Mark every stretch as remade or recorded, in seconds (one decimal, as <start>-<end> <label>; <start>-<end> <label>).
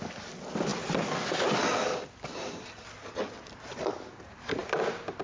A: 0.0-5.2 recorded